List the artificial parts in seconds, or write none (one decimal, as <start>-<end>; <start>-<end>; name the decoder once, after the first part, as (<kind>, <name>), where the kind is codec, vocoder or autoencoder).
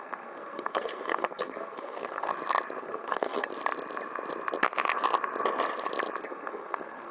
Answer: 0.0-2.3 (codec, SNAC); 2.8-3.5; 6.2-7.1